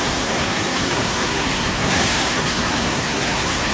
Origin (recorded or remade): remade